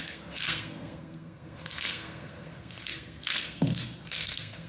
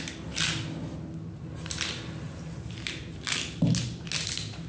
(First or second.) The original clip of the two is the second